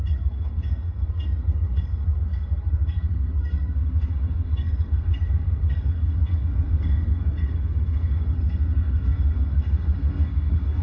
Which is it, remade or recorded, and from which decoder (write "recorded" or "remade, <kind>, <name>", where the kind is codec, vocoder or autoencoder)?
remade, codec, SNAC